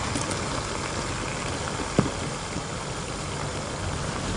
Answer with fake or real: real